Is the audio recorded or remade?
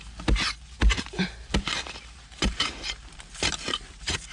remade